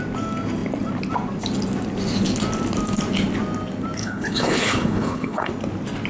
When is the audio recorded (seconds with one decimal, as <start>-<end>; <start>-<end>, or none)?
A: 0.0-4.0; 5.5-6.1